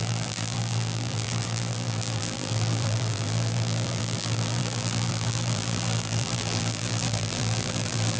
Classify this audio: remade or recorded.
remade